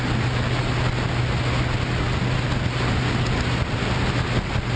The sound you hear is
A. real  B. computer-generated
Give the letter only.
A